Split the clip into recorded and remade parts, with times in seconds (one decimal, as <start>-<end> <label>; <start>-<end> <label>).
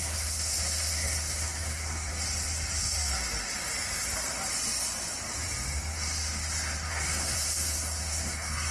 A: 0.0-2.1 remade; 2.1-6.9 recorded; 6.9-8.7 remade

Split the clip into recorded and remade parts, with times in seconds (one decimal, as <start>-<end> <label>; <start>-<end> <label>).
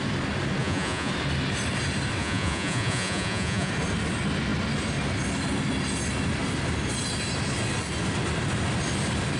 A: 0.0-0.6 recorded; 0.6-1.1 remade; 1.1-2.2 recorded; 2.2-3.7 remade; 3.7-9.4 recorded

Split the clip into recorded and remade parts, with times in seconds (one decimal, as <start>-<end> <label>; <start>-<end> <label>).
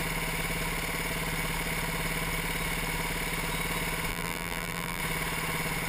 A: 0.0-4.1 recorded; 4.1-5.0 remade; 5.0-5.9 recorded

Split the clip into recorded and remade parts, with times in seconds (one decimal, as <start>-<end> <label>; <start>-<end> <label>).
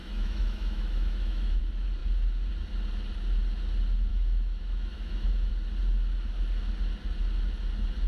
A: 0.0-1.6 remade; 1.6-4.1 recorded; 4.1-5.5 remade; 5.5-8.1 recorded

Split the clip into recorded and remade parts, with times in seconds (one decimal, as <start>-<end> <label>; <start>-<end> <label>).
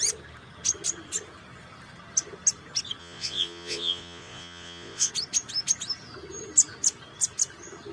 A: 0.0-3.0 recorded; 3.0-5.1 remade; 5.1-7.9 recorded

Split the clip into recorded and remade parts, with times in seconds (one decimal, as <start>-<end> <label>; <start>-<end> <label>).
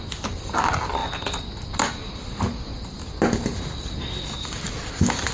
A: 0.0-5.3 recorded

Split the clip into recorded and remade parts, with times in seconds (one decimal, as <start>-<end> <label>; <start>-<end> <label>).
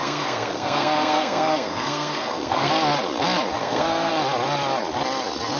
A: 0.0-2.7 remade; 2.7-3.6 recorded; 3.6-4.1 remade; 4.1-5.6 recorded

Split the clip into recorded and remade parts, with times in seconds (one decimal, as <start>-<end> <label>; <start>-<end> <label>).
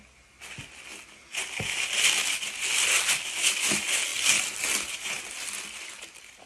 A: 0.0-6.5 recorded